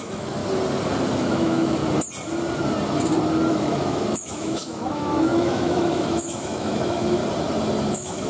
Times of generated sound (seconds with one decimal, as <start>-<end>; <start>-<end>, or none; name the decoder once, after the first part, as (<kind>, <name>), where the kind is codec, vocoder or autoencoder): 0.0-0.4 (autoencoder, DAC-VAE); 1.2-1.8; 3.5-7.2; 7.9-8.3